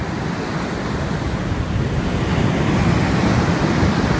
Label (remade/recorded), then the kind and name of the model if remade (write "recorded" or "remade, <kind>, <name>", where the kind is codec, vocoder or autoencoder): recorded